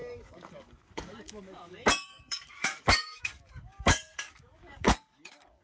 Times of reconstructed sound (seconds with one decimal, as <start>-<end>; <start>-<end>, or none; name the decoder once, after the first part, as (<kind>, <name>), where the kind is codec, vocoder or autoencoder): 0.0-5.6 (codec, DAC)